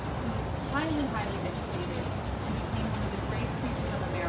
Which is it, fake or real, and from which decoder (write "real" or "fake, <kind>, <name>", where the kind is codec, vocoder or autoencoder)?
real